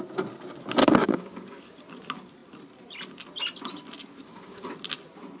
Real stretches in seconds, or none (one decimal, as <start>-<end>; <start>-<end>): 0.0-0.8; 1.8-4.2; 4.7-5.4